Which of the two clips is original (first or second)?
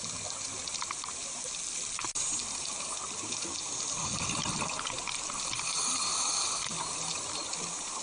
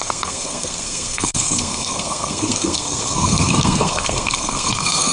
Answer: first